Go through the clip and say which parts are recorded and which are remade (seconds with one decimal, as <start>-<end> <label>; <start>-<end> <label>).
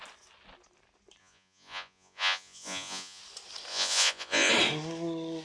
0.0-1.2 recorded; 1.2-3.2 remade; 3.2-3.7 recorded; 3.7-4.5 remade; 4.5-5.4 recorded